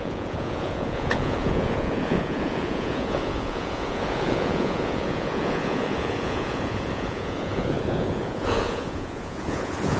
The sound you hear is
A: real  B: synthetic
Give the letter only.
B